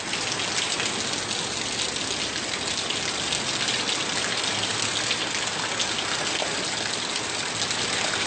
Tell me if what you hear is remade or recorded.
recorded